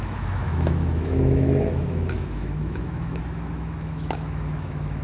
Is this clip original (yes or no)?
no